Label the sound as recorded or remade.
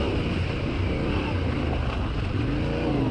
recorded